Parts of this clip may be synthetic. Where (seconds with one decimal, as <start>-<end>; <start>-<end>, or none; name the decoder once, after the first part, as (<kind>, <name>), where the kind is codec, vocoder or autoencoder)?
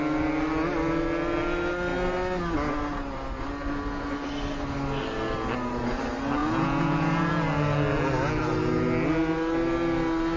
6.4-7.3 (vocoder, Vocos)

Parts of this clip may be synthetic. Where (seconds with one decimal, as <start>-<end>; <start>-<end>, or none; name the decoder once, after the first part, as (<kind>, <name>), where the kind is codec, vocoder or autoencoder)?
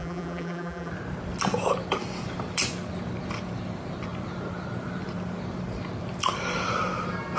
0.0-0.9 (vocoder, BigVGAN v2)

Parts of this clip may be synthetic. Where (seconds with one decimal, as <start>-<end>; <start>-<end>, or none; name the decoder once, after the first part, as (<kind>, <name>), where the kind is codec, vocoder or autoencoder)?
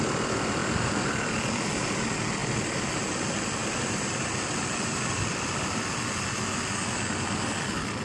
2.4-2.9 (vocoder, BigVGAN v2); 3.6-6.4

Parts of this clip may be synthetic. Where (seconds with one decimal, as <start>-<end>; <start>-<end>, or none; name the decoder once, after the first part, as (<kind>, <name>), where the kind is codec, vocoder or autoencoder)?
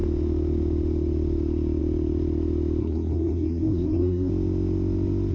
2.8-4.3 (codec, SNAC)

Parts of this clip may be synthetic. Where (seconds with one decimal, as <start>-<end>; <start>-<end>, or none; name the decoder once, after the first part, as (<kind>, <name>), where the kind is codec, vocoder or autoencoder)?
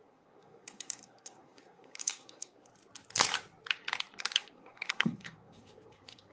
0.0-2.7 (codec, SNAC); 4.2-6.3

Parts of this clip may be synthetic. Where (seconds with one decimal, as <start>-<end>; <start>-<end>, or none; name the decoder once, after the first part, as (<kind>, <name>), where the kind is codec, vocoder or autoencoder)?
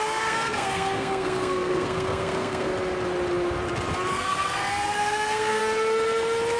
0.0-2.7 (codec, SNAC); 4.1-5.6